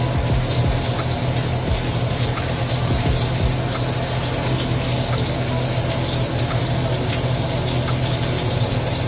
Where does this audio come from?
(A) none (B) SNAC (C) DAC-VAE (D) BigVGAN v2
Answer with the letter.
A